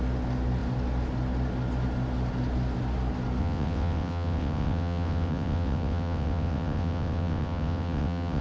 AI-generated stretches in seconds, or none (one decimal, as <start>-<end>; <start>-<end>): 3.4-8.4